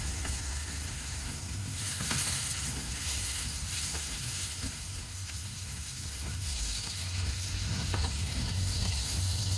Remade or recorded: remade